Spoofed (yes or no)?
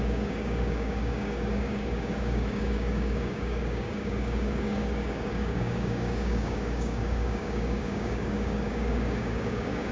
yes